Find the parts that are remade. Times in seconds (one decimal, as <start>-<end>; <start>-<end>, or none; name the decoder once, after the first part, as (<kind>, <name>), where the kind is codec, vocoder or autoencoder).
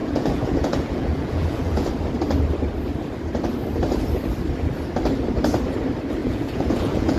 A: 0.0-1.9 (vocoder, Vocos); 6.2-7.2